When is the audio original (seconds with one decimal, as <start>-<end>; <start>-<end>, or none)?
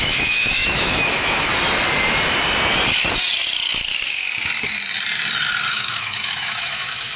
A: 1.5-5.7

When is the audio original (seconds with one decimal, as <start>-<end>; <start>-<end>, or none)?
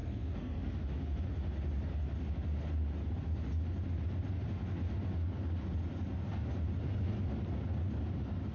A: 0.7-8.5